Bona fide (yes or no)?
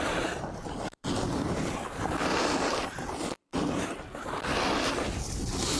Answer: yes